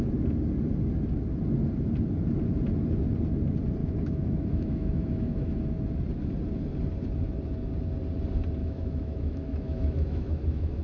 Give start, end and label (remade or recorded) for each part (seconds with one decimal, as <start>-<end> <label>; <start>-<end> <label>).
0.0-3.8 recorded; 3.8-5.6 remade; 5.6-8.6 recorded; 8.6-10.8 remade